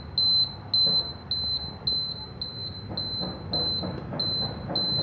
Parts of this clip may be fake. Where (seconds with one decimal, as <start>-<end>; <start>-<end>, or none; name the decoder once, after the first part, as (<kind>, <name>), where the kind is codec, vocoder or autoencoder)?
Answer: none